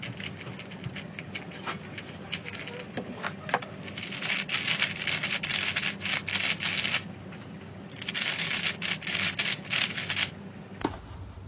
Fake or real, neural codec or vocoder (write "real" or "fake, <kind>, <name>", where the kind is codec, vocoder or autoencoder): real